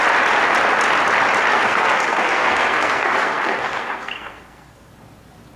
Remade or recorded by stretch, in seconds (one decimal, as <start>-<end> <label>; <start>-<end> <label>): 0.0-1.5 recorded; 1.5-4.9 remade; 4.9-5.6 recorded